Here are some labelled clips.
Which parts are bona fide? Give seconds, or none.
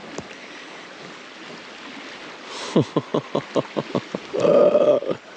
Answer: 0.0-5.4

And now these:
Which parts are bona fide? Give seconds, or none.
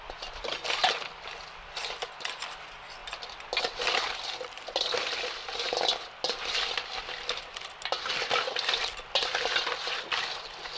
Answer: 0.0-10.8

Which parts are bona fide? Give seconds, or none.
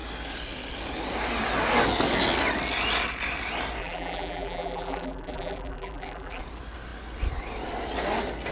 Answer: 0.0-3.8; 6.4-8.5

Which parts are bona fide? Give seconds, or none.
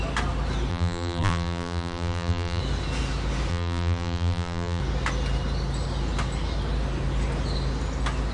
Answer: 0.0-0.7; 2.6-3.5; 4.8-8.3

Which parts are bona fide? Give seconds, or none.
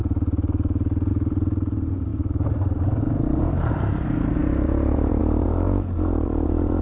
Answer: none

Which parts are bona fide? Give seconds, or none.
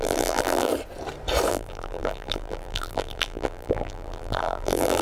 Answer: 0.7-1.5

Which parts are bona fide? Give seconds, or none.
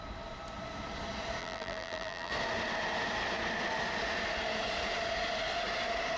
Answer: 0.0-1.4; 2.3-6.2